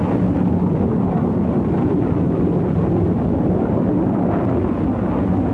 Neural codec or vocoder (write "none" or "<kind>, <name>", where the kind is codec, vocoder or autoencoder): none